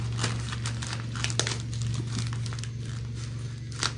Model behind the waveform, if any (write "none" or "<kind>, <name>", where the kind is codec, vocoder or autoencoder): none